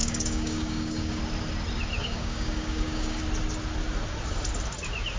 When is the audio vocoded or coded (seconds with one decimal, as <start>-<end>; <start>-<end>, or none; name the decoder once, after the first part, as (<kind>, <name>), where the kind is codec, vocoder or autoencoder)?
0.0-1.2 (codec, DAC); 2.0-3.2